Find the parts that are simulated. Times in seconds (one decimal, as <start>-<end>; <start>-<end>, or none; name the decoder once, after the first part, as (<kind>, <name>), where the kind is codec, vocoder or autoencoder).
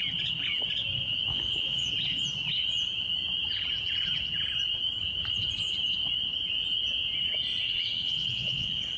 1.3-1.9 (vocoder, WaveNeXt); 7.5-9.0